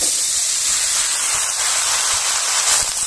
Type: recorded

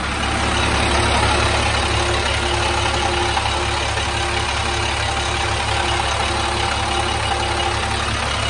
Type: recorded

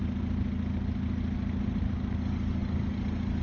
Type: recorded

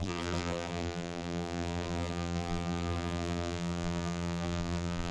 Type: remade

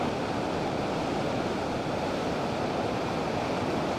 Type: recorded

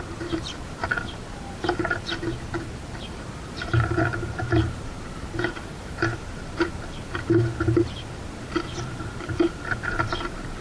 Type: remade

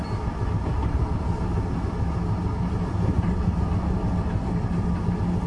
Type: recorded